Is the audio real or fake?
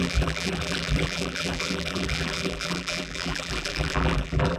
fake